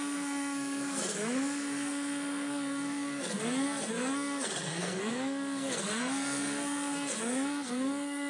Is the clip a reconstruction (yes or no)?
yes